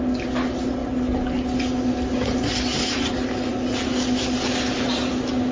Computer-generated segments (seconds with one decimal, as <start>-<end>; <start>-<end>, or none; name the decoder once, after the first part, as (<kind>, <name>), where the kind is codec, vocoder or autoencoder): none